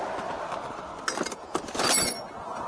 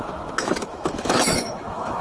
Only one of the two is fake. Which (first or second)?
second